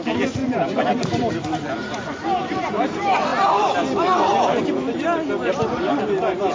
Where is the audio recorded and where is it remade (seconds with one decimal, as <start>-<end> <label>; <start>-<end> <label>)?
0.0-6.5 remade